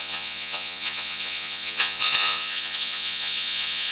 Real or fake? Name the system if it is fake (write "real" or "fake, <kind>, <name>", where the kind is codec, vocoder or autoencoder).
fake, vocoder, Vocos